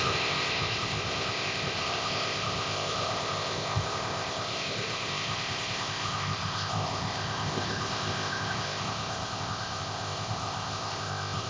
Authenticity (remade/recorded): remade